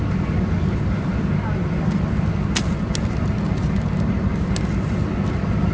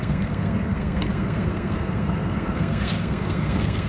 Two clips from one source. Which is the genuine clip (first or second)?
first